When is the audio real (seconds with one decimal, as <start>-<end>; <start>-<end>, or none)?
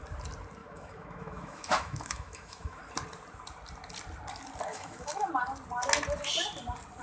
0.0-0.6; 2.8-4.7; 5.3-7.0